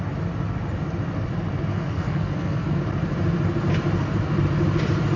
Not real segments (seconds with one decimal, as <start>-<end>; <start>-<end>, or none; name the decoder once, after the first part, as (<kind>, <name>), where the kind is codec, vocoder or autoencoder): 1.7-2.8 (codec, SNAC)